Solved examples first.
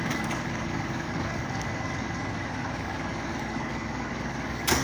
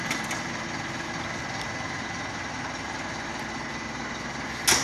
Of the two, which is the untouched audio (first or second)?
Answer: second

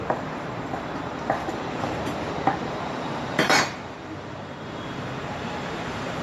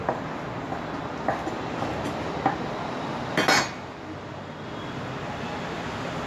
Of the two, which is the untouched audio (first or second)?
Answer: second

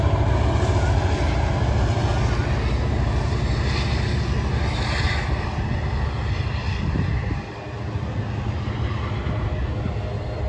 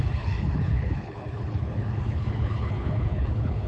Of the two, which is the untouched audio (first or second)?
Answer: first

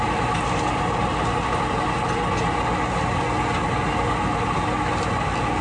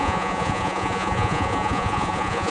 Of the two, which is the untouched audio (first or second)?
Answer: first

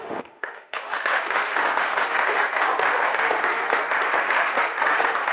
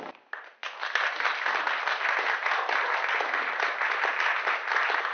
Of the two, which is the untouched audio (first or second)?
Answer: second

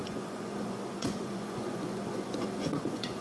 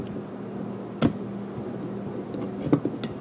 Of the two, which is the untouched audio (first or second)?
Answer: second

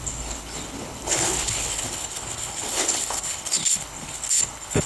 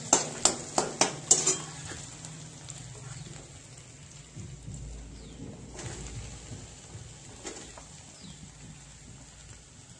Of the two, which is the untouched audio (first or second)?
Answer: second